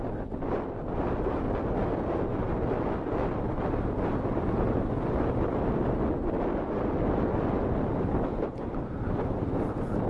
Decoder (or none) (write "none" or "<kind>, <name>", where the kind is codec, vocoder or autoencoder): none